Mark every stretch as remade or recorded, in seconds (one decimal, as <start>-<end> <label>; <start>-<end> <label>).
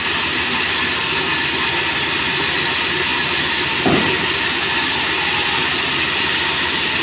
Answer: 0.0-7.0 recorded